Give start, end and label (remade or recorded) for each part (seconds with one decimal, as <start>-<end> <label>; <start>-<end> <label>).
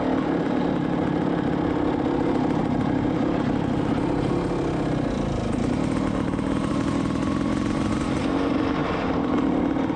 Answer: 0.0-8.8 recorded; 8.8-9.4 remade; 9.4-10.0 recorded